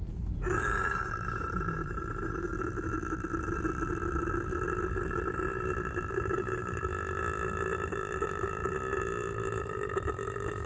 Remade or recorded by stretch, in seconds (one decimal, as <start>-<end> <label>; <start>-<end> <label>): 0.0-2.5 remade; 2.5-6.1 recorded; 6.1-6.8 remade; 6.8-7.9 recorded; 7.9-8.6 remade; 8.6-9.6 recorded; 9.6-10.7 remade